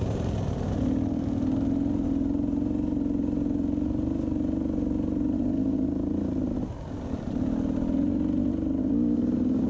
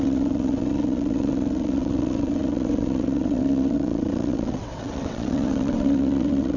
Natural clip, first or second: first